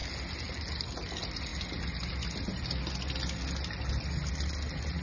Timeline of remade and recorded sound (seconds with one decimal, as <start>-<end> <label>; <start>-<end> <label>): 0.0-5.0 recorded